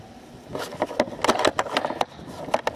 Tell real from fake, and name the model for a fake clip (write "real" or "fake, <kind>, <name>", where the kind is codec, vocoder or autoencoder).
real